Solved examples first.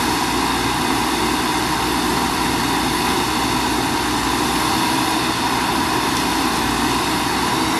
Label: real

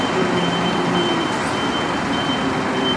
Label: real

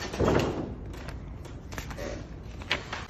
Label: real